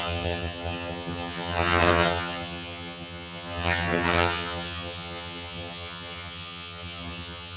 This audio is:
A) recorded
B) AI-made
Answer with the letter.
B